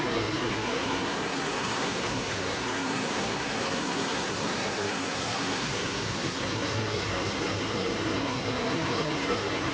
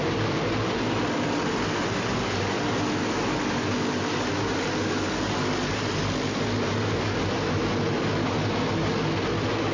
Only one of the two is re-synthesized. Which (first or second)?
first